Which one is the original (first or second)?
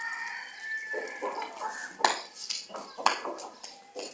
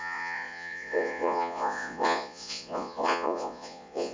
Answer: first